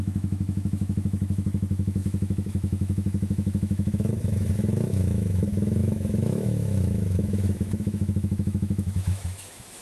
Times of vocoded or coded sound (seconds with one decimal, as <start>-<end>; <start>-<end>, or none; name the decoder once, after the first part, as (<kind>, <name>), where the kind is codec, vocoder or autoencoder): 0.0-9.8 (autoencoder, DAC-VAE)